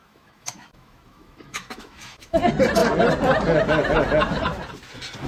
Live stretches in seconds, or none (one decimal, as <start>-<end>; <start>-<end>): 2.4-5.3